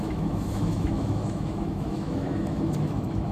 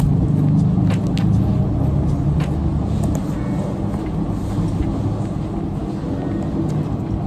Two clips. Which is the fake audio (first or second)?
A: first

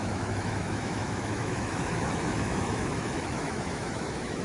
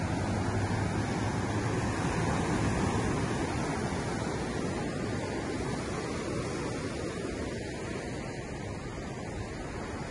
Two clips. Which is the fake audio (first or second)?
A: first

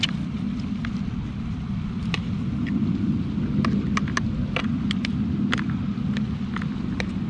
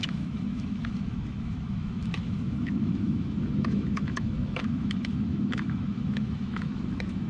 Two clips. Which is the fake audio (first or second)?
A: second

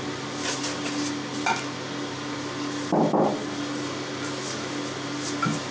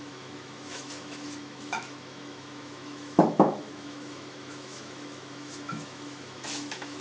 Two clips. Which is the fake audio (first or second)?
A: second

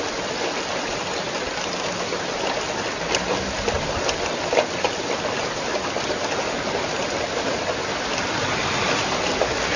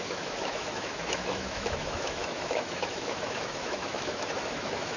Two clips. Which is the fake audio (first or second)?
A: second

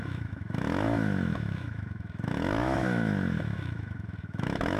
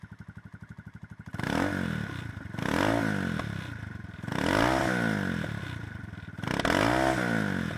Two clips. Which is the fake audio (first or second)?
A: first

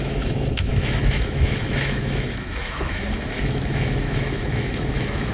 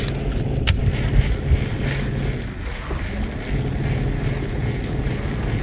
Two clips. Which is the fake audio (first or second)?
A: first